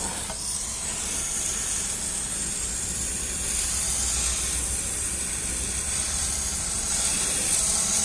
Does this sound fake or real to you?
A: fake